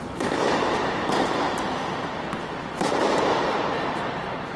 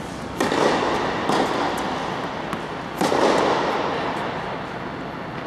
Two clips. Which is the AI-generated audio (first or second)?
first